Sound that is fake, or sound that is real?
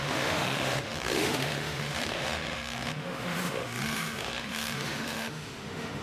fake